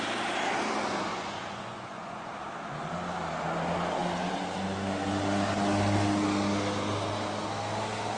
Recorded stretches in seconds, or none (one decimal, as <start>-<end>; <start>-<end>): 0.0-1.1; 2.3-8.2